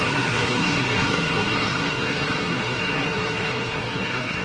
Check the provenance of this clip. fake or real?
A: fake